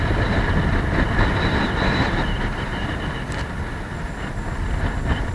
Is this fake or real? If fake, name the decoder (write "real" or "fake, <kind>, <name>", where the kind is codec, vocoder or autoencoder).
real